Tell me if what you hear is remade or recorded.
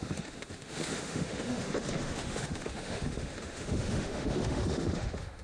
remade